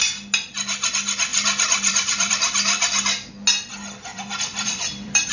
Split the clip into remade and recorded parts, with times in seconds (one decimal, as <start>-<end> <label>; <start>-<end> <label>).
0.0-1.3 recorded; 1.3-2.3 remade; 2.3-4.1 recorded; 4.1-5.3 remade